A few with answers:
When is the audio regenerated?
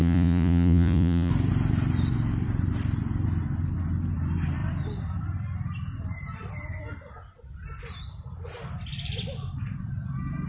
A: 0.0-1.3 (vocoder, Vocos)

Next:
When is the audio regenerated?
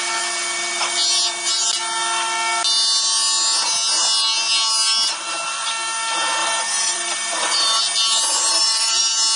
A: 6.4-7.8 (vocoder, BigVGAN v2); 8.5-9.0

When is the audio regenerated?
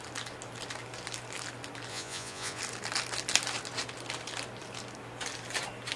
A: 1.9-2.6 (vocoder, Vocos)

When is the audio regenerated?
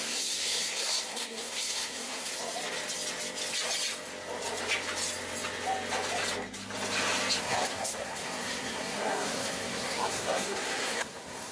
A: 0.0-2.3 (codec, SNAC); 7.4-11.5